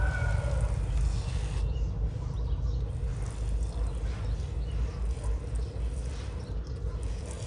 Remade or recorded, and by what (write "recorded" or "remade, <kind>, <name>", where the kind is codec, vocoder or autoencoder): recorded